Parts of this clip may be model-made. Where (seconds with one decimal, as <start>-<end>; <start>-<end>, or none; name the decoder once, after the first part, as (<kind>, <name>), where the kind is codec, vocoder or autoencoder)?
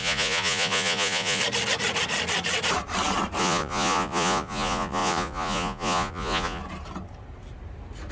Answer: 0.0-1.4 (vocoder, Vocos); 3.4-6.6